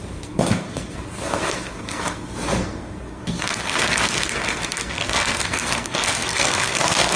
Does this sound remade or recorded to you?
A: remade